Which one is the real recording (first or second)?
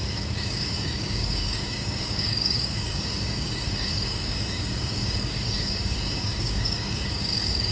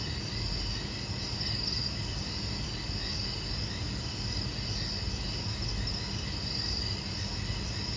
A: second